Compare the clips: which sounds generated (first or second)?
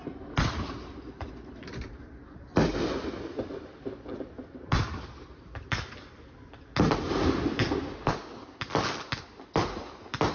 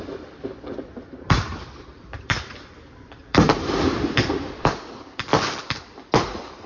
second